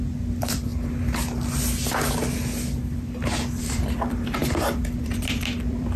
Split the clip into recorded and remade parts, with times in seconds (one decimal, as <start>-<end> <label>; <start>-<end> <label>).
0.0-0.7 remade; 0.7-3.6 recorded; 3.6-6.0 remade